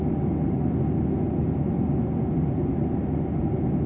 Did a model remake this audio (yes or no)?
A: no